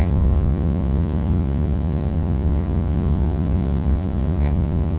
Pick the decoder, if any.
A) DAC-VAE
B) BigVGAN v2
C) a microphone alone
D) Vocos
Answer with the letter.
D